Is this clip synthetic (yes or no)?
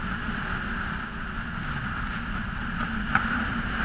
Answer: no